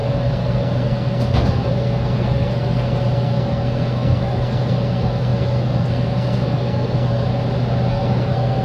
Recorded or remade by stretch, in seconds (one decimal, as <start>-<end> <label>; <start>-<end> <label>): 0.0-7.3 remade; 7.3-7.9 recorded; 7.9-8.6 remade